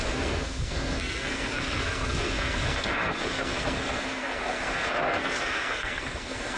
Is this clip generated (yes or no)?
yes